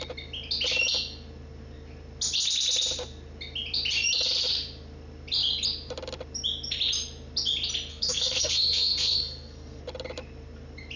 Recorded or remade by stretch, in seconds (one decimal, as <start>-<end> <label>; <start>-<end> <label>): 0.0-7.9 recorded; 7.9-9.8 remade; 9.8-11.0 recorded